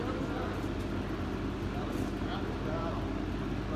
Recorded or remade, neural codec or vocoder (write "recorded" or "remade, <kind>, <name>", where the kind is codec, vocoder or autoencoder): recorded